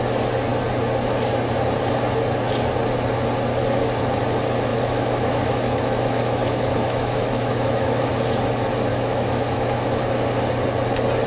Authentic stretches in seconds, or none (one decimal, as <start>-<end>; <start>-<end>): 0.0-4.7; 8.1-8.9; 10.0-11.3